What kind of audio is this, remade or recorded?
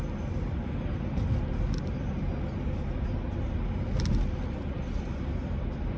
recorded